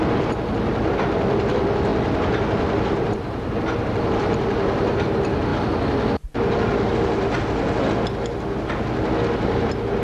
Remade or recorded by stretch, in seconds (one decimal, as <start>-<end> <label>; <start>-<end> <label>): 0.0-10.0 recorded

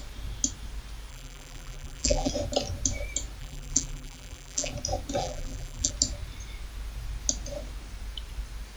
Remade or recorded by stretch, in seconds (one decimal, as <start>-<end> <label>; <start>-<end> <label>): 0.0-1.1 recorded; 1.1-2.3 remade; 2.3-3.4 recorded; 3.4-4.7 remade; 4.7-5.2 recorded; 5.2-5.9 remade; 5.9-8.8 recorded

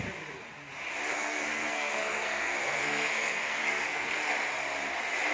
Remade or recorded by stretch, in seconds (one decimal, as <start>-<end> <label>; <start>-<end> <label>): 0.0-1.1 recorded; 1.1-4.3 remade; 4.3-5.3 recorded

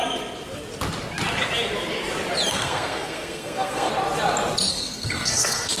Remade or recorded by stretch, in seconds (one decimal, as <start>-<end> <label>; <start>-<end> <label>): 0.0-2.5 recorded; 2.5-3.9 remade; 3.9-4.7 recorded; 4.7-5.8 remade

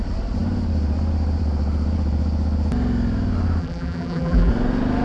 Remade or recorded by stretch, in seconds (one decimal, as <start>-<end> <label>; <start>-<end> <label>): 0.0-3.6 recorded; 3.6-4.5 remade; 4.5-5.0 recorded